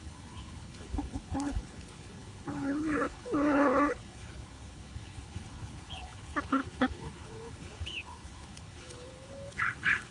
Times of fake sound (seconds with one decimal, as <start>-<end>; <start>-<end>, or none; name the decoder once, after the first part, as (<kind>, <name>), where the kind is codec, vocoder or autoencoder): 0.0-10.1 (codec, HILCodec)